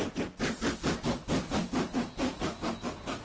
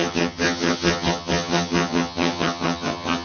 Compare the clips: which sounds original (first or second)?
first